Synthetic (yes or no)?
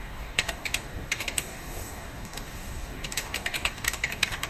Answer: yes